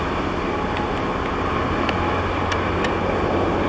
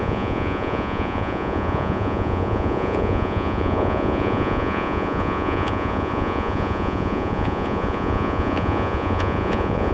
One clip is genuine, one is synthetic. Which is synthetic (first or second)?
second